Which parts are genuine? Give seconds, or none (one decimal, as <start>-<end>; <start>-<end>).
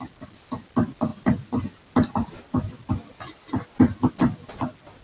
0.0-5.0